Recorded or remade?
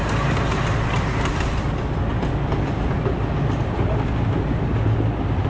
recorded